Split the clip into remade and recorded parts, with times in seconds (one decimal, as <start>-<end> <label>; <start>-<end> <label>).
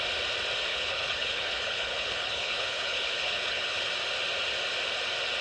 0.0-0.7 recorded; 0.7-3.9 remade; 3.9-5.4 recorded